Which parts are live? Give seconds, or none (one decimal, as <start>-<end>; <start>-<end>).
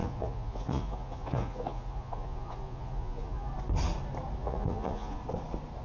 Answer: 3.5-4.4; 5.2-5.8